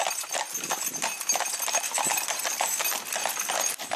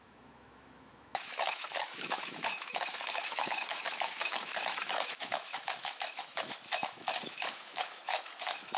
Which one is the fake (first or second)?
second